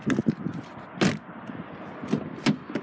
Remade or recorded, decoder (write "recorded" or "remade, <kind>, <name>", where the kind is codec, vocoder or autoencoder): recorded